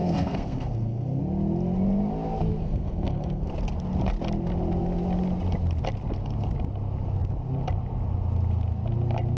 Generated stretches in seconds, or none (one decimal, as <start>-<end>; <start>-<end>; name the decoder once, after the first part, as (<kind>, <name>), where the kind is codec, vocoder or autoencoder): 0.0-1.2 (codec, SNAC); 2.6-3.5